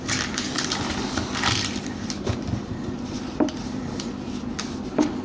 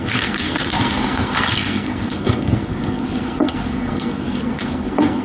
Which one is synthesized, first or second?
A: second